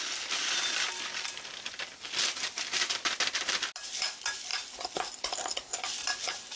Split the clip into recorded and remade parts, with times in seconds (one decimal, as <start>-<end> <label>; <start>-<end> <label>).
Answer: 0.0-6.6 recorded